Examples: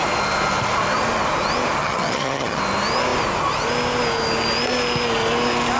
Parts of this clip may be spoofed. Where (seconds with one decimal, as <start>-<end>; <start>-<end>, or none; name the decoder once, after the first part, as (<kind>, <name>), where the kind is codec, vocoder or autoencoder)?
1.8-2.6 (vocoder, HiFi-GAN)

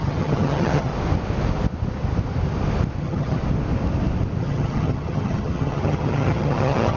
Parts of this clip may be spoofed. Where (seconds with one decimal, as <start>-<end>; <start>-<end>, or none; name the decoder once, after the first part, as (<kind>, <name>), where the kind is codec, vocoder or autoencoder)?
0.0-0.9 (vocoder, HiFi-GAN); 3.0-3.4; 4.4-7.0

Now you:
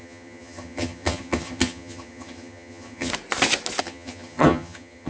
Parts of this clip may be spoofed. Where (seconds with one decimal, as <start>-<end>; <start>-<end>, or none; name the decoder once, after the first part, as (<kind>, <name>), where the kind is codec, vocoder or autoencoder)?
0.0-3.1 (vocoder, HiFi-GAN); 3.8-5.1